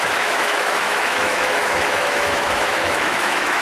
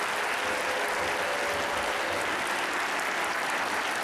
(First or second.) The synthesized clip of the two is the first